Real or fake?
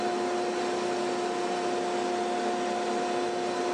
real